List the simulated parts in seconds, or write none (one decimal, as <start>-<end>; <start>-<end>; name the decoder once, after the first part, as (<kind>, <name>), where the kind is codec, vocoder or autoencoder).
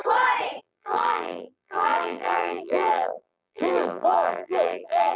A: 0.6-5.2 (vocoder, BigVGAN v2)